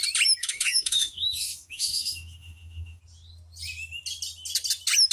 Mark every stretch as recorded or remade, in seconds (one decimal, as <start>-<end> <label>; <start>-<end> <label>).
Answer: 0.0-0.4 recorded; 0.4-3.0 remade; 3.0-5.1 recorded